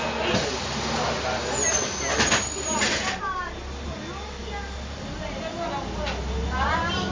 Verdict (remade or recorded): recorded